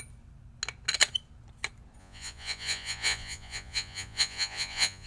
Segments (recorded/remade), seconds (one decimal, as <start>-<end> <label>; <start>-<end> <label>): 0.0-2.0 recorded; 2.0-5.1 remade